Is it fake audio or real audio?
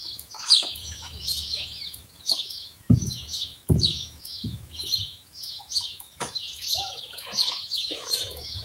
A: fake